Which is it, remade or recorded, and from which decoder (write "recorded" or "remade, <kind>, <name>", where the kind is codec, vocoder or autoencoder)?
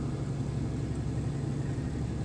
recorded